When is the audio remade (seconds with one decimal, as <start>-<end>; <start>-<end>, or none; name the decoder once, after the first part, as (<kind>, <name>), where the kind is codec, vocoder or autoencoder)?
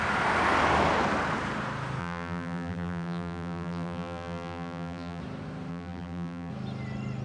2.0-5.2 (vocoder, BigVGAN v2); 5.7-6.5